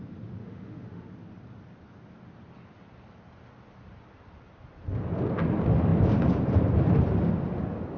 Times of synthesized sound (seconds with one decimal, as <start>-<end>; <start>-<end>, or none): 0.4-1.1